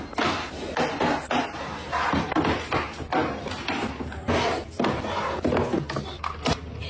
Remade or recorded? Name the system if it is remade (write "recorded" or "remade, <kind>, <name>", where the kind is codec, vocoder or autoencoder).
recorded